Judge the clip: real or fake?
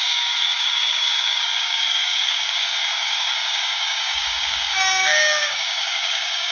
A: fake